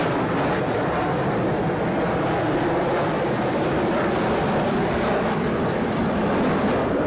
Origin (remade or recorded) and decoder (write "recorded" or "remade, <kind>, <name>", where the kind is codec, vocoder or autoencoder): recorded